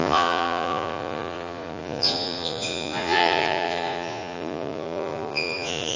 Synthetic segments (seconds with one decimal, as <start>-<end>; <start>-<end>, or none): 0.0-6.0